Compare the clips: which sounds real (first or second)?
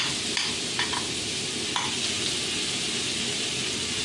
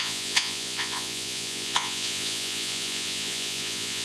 first